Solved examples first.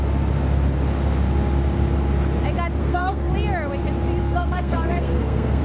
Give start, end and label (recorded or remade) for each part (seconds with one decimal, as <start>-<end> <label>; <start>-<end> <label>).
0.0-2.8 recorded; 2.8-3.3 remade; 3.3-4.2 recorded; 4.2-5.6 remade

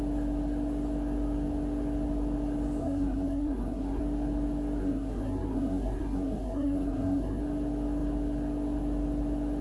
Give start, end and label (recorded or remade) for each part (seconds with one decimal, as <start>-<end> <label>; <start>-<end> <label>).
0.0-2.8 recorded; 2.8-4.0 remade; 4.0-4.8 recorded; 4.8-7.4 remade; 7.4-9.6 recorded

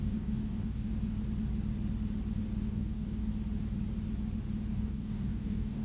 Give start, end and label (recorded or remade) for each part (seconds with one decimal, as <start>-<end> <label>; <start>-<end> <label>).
0.0-0.9 remade; 0.9-2.7 recorded; 2.7-3.3 remade; 3.3-4.7 recorded; 4.7-5.8 remade

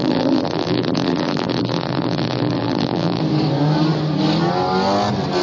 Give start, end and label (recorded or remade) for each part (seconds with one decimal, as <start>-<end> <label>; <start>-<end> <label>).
0.0-3.2 remade; 3.2-5.4 recorded

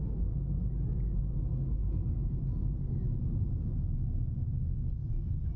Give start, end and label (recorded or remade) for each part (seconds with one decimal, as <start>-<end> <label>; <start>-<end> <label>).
0.0-1.8 recorded; 1.8-2.4 remade; 2.4-5.6 recorded